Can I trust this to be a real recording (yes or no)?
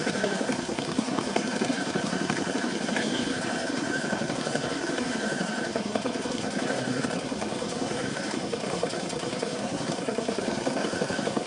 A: no